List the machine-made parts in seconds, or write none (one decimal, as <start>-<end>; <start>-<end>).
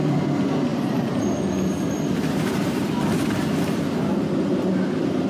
0.0-5.3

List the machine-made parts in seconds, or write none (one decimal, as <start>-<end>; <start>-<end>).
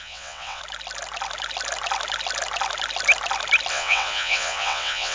0.0-0.6; 3.7-5.1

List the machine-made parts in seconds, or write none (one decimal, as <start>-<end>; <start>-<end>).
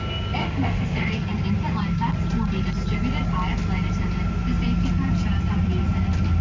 0.4-1.1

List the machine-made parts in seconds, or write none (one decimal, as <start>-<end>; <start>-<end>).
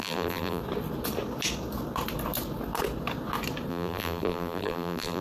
0.0-0.6; 3.7-5.2